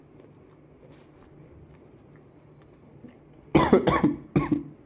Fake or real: real